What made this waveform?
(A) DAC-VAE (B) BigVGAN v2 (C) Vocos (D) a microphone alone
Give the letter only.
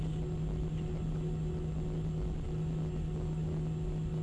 D